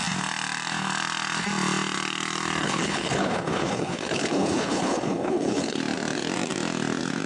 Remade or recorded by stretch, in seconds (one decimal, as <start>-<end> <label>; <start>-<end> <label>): 0.0-2.6 recorded; 2.6-5.8 remade; 5.8-7.3 recorded